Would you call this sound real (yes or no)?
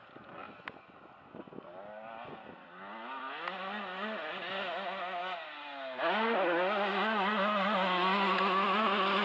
yes